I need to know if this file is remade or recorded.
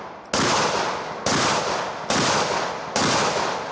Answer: recorded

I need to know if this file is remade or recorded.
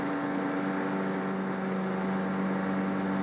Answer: recorded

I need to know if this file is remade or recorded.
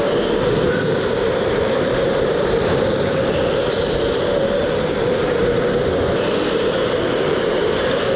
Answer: remade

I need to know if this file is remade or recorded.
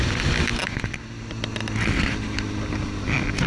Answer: recorded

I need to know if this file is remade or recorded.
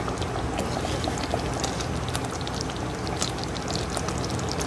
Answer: recorded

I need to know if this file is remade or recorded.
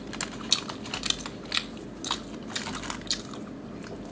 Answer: recorded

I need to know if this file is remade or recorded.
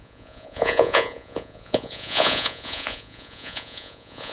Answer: remade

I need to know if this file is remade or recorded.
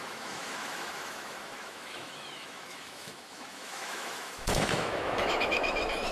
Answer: remade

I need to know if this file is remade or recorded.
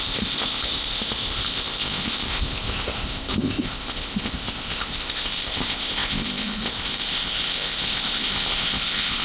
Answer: remade